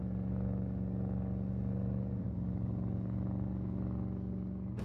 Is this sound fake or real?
fake